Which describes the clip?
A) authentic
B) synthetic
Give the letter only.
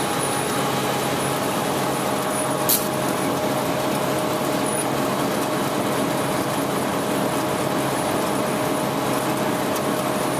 A